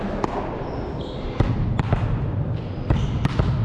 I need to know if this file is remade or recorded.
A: recorded